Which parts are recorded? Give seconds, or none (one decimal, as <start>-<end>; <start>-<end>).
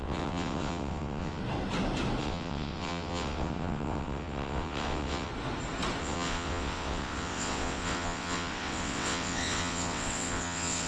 1.4-2.2; 5.3-6.0